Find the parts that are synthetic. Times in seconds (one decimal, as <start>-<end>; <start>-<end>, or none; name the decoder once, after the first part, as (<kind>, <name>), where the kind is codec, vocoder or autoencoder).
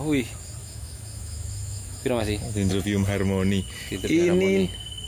0.6-2.7 (autoencoder, DAC-VAE)